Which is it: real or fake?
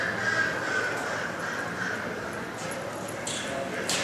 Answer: real